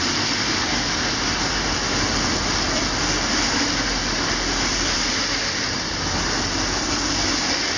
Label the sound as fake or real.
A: real